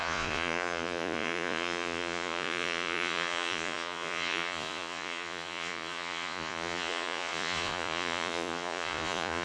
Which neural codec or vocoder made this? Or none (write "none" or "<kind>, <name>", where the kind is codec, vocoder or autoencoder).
vocoder, Vocos